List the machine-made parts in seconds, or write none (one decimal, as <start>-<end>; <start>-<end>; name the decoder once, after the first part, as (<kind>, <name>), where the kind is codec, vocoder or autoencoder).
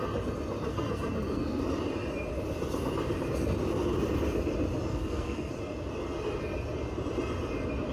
0.7-1.6 (codec, SNAC); 4.9-5.5